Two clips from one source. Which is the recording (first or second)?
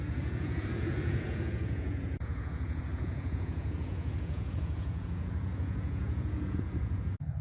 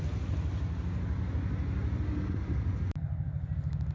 second